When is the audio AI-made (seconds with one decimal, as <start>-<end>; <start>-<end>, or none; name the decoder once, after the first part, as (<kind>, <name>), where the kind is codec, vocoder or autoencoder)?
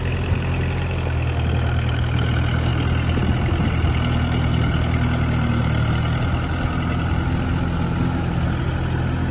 none